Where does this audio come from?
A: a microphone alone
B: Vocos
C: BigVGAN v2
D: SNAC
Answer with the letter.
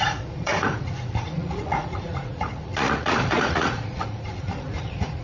B